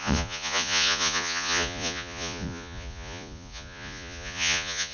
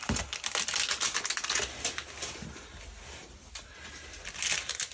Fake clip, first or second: first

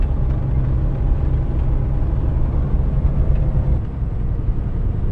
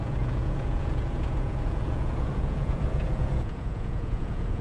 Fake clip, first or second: second